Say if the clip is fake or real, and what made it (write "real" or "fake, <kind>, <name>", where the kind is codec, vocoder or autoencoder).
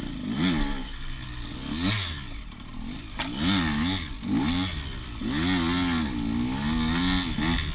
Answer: real